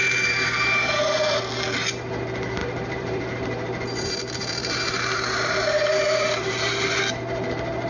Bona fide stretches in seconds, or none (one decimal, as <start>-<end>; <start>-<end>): 1.4-2.6; 7.0-7.9